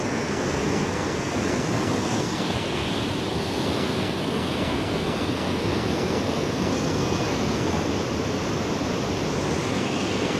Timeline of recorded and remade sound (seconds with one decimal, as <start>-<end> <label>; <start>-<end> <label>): 0.0-2.8 remade; 2.8-3.3 recorded; 3.3-7.9 remade; 7.9-9.7 recorded; 9.7-10.4 remade